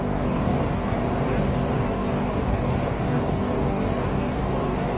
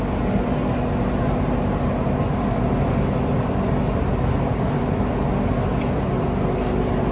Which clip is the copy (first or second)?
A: first